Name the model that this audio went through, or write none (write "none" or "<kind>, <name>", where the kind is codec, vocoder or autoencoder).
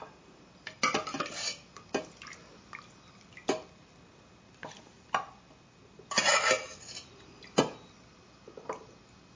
none